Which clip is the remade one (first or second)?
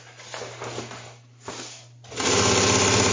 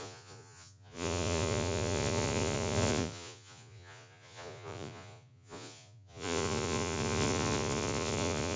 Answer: second